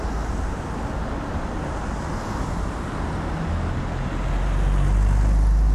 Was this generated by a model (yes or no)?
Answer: no